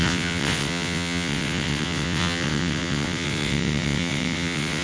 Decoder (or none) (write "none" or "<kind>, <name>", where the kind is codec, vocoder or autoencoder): vocoder, WaveNeXt